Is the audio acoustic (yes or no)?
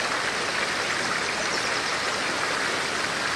yes